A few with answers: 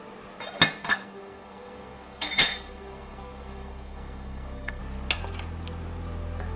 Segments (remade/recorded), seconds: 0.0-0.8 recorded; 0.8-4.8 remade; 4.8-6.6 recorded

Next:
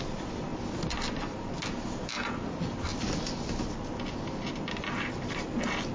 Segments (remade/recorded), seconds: 0.0-5.9 recorded